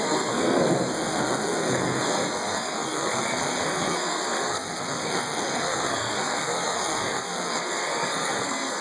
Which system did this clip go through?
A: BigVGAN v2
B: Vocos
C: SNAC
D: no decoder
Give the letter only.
C